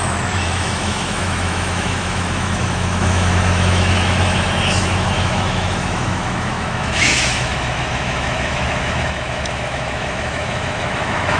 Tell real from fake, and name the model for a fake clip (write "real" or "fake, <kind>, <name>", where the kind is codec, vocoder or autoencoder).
fake, autoencoder, DAC-VAE